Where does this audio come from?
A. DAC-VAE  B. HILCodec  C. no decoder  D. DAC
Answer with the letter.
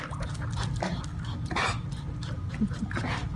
C